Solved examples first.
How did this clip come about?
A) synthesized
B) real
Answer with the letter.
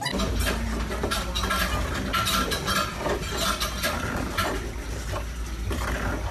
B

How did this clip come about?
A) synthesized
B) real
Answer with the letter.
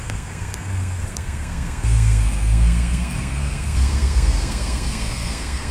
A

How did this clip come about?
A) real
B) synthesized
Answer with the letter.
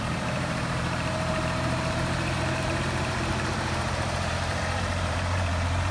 B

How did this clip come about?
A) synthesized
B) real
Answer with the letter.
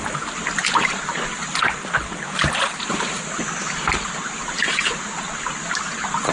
B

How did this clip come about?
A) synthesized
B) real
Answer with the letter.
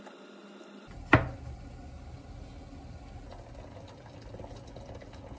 B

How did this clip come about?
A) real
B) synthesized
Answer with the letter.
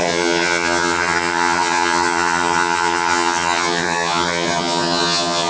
B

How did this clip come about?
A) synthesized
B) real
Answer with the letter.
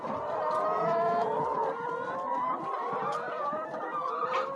B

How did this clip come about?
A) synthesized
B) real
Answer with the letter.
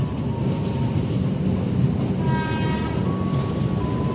B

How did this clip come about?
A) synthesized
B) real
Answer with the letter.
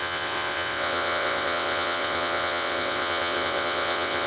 A